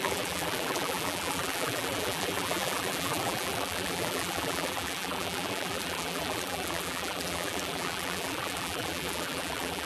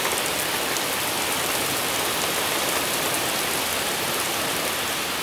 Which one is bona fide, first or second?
second